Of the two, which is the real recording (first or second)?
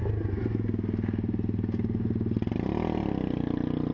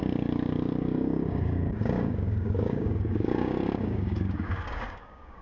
first